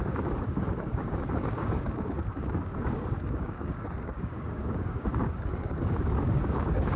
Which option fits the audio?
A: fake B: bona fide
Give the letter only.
A